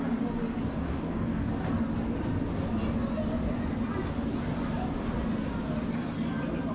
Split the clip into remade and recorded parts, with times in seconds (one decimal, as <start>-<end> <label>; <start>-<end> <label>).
0.0-0.9 recorded; 0.9-1.5 remade; 1.5-6.7 recorded